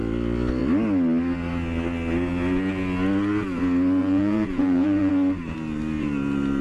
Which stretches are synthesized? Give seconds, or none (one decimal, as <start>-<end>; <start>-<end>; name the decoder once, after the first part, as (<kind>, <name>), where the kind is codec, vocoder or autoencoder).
4.0-5.1 (vocoder, Vocos)